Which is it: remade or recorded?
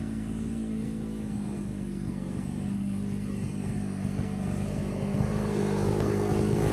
remade